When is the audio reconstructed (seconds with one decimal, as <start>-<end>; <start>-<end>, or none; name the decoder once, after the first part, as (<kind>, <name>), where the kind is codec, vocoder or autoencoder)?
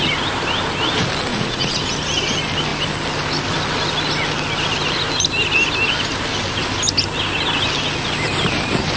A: 1.3-1.8 (vocoder, Vocos)